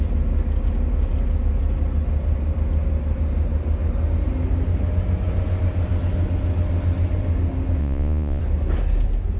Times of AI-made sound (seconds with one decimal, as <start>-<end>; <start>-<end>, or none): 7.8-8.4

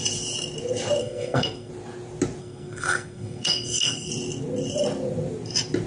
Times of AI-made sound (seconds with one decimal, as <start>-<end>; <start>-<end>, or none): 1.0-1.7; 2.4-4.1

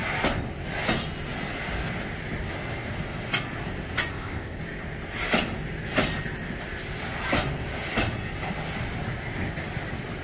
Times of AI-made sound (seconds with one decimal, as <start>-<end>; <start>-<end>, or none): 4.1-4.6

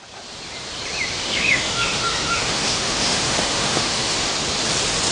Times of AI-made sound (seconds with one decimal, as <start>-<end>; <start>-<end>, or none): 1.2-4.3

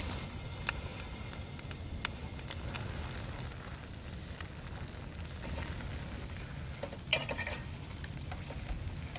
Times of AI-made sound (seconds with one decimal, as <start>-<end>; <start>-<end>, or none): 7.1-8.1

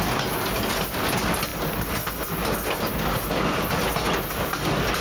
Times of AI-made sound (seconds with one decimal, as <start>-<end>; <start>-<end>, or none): none

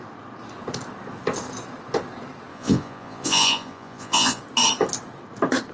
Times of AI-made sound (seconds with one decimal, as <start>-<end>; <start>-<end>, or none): 2.5-4.4

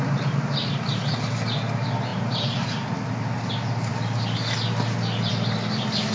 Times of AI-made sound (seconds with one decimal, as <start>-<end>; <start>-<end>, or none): none